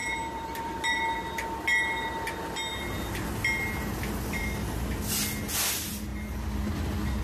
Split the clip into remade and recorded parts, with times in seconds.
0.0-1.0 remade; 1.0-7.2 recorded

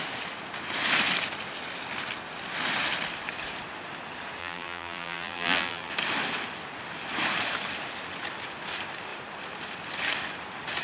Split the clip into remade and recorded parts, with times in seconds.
0.0-4.4 recorded; 4.4-5.9 remade; 5.9-10.8 recorded

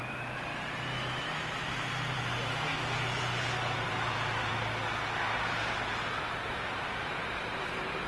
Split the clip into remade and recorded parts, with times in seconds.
0.0-0.5 remade; 0.5-1.2 recorded; 1.2-4.5 remade; 4.5-6.3 recorded; 6.3-8.1 remade

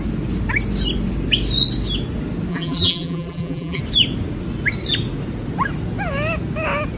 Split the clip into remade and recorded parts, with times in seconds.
0.0-2.5 recorded; 2.5-3.8 remade; 3.8-7.0 recorded